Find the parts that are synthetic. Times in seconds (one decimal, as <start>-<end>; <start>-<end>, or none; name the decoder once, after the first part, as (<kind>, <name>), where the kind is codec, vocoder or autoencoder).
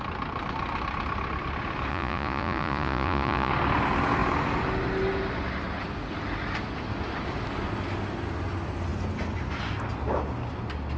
1.9-3.5 (vocoder, Vocos)